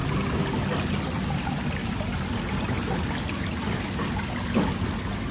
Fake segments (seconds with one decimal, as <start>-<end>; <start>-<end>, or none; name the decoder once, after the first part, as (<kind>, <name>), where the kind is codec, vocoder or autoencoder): none